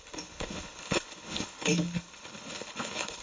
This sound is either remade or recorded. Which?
remade